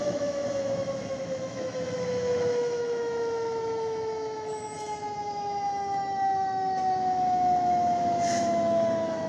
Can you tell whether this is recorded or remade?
remade